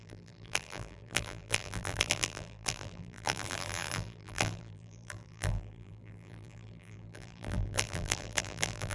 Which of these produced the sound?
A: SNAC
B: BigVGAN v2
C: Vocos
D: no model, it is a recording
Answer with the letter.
B